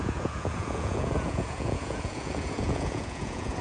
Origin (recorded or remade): remade